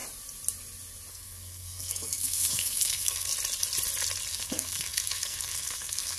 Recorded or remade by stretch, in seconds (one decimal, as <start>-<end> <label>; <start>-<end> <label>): 0.0-1.1 recorded; 1.1-3.3 remade; 3.3-4.3 recorded; 4.3-6.2 remade